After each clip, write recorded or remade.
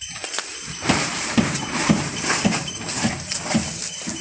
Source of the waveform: remade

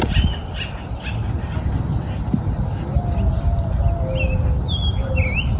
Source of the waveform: recorded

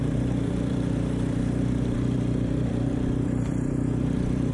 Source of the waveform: remade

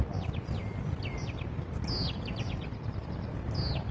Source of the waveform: recorded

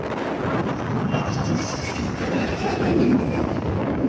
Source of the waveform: recorded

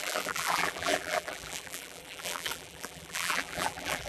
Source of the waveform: remade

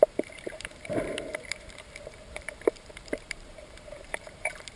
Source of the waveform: remade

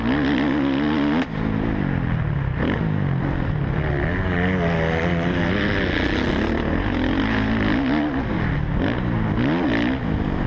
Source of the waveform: recorded